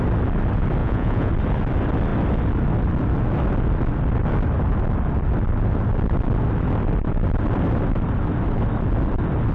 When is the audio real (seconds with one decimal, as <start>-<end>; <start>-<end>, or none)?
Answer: 0.0-0.8; 1.3-9.5